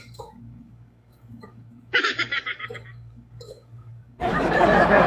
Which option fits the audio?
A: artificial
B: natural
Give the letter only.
A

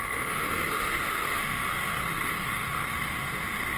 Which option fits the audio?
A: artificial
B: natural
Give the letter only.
A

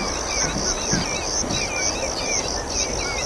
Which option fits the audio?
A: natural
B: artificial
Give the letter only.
A